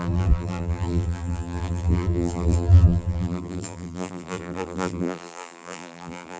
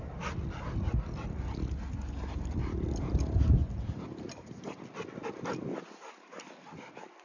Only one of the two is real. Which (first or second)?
second